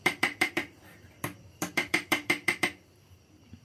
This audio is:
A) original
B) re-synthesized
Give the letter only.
B